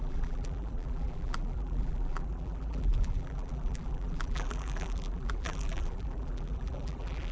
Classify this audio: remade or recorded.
remade